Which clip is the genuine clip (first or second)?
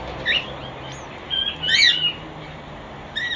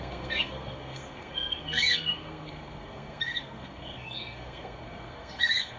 first